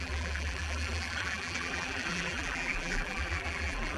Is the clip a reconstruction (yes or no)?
yes